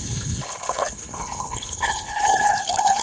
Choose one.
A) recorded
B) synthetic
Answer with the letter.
B